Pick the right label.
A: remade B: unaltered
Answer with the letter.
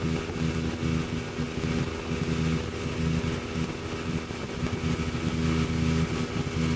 B